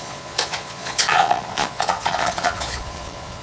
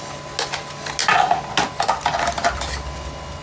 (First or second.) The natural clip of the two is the second